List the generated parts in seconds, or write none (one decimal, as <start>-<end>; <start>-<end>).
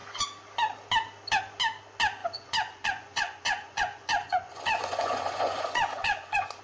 2.2-6.6